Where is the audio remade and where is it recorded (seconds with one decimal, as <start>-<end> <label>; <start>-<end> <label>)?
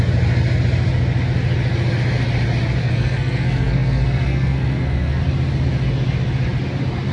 0.0-2.8 recorded; 2.8-5.2 remade; 5.2-7.1 recorded